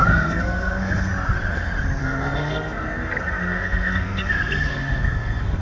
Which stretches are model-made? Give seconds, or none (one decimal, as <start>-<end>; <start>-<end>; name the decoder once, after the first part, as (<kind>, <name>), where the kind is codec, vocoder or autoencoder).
0.0-1.1 (codec, SNAC); 2.0-5.6